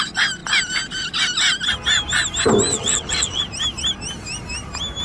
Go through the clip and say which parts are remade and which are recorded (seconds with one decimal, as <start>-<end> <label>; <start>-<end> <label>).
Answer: 0.0-2.7 recorded; 2.7-3.4 remade; 3.4-5.0 recorded